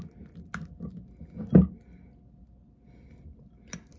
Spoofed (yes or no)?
no